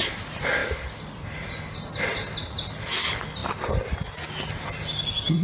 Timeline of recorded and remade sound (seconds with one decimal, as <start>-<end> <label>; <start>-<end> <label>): 0.0-5.4 recorded